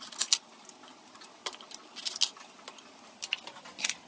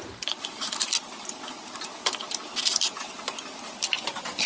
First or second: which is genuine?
first